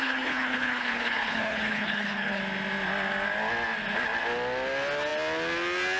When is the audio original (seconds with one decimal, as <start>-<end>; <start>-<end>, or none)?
2.4-6.0

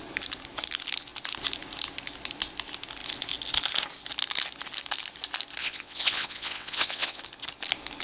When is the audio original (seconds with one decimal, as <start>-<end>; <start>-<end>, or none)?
0.0-5.6; 7.2-8.0

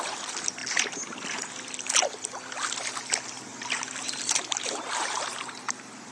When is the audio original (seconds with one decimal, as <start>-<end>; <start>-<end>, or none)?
0.0-0.6; 1.4-3.5